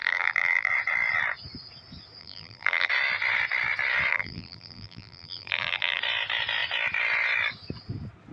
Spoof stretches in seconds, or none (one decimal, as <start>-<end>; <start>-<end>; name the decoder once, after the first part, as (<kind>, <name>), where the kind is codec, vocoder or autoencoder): 0.0-0.7 (vocoder, BigVGAN v2); 2.2-2.9; 4.1-6.0